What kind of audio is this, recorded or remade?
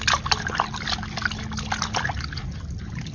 recorded